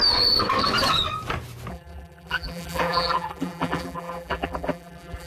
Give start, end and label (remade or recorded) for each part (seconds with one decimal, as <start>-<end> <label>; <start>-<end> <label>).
0.0-1.7 recorded; 1.7-5.3 remade